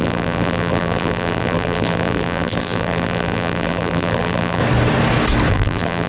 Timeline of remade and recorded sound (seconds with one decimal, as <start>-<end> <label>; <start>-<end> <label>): 0.0-4.6 remade; 4.6-5.5 recorded; 5.5-6.1 remade